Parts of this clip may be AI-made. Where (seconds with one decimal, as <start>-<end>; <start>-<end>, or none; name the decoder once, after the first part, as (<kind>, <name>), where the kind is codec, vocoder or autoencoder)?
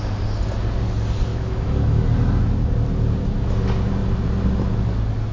1.3-2.0 (autoencoder, DAC-VAE)